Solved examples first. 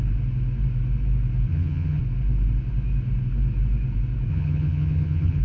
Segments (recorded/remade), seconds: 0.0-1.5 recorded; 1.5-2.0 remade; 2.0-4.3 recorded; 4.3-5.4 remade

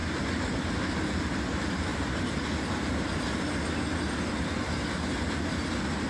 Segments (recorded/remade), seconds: 0.0-6.1 recorded

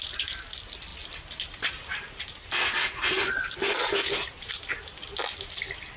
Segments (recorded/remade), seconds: 0.0-6.0 recorded